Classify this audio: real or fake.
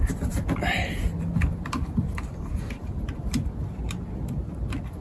real